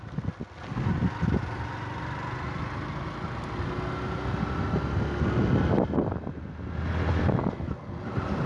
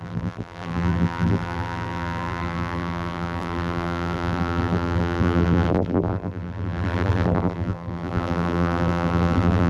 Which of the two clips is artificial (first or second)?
second